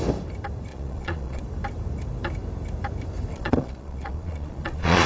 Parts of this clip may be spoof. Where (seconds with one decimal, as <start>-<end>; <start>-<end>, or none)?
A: 0.7-1.4; 3.3-5.1